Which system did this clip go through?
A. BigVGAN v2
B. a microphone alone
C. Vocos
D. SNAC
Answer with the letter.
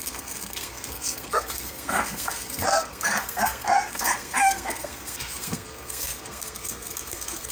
D